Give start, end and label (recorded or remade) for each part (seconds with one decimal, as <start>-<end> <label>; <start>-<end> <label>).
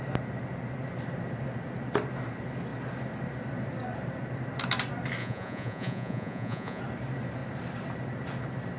0.0-5.2 recorded; 5.2-6.8 remade; 6.8-8.8 recorded